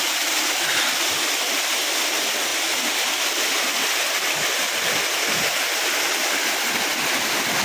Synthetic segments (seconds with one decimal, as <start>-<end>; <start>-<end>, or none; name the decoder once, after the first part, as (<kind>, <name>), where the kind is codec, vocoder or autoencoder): 6.9-7.6 (vocoder, BigVGAN v2)